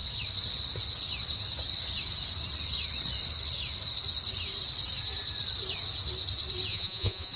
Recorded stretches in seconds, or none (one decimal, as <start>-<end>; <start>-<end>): 0.0-6.7